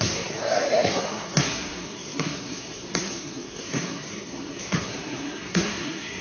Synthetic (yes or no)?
yes